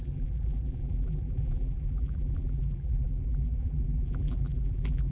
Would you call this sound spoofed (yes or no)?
yes